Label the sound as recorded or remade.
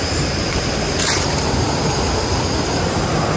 recorded